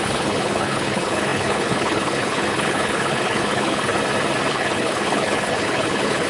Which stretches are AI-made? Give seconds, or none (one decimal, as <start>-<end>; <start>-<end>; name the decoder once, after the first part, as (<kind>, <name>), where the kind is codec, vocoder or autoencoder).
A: 0.0-3.9 (codec, HILCodec); 4.5-6.3